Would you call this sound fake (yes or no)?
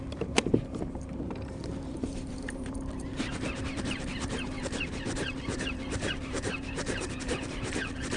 yes